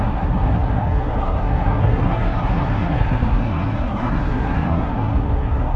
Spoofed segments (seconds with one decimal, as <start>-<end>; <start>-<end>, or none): 0.0-5.8